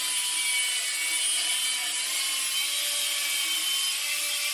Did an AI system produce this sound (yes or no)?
no